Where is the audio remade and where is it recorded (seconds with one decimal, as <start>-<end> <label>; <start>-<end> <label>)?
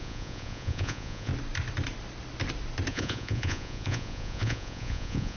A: 0.0-1.3 remade; 1.3-2.9 recorded; 2.9-5.4 remade